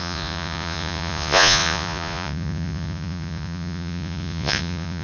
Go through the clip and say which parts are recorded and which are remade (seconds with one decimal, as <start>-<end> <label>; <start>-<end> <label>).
0.0-5.0 remade